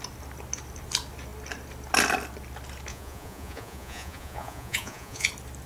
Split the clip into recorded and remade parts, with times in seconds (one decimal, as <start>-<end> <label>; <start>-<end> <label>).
0.0-2.9 recorded; 2.9-5.3 remade; 5.3-5.7 recorded